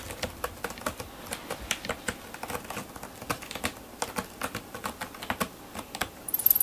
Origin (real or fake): fake